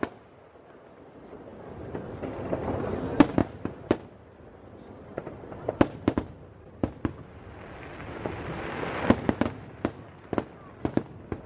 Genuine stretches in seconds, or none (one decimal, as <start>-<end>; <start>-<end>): 0.0-3.4; 7.5-11.5